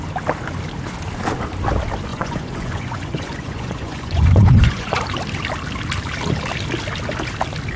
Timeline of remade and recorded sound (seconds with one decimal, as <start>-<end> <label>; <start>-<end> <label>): 0.0-2.1 recorded; 2.1-5.0 remade; 5.0-7.8 recorded